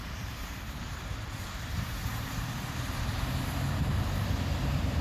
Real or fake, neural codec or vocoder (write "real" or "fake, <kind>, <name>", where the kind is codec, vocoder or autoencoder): fake, vocoder, BigVGAN v2